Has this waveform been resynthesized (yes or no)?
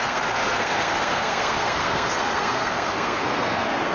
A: yes